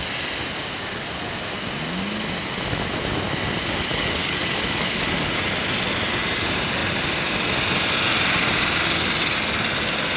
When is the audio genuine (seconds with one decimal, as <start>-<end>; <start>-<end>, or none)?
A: 0.0-3.9; 5.4-10.2